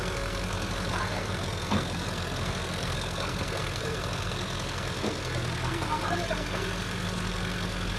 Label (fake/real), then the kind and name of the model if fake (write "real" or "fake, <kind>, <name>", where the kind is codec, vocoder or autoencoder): fake, codec, SNAC